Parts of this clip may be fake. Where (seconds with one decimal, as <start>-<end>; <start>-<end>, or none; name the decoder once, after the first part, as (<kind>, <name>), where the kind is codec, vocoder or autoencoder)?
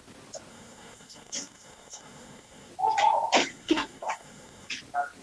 0.5-2.7 (codec, SNAC); 3.5-4.7